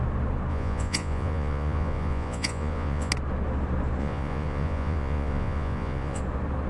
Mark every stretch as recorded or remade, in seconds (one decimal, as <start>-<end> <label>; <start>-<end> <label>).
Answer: 0.0-0.5 recorded; 0.5-3.1 remade; 3.1-4.0 recorded; 4.0-6.2 remade; 6.2-6.7 recorded